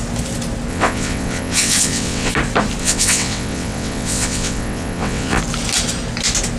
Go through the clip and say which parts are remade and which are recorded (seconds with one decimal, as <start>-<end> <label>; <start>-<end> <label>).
0.0-0.7 recorded; 0.7-2.3 remade; 2.3-2.8 recorded; 2.8-5.4 remade; 5.4-6.6 recorded